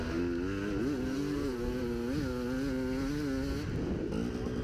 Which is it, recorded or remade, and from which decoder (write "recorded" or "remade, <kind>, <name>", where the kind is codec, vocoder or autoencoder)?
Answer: recorded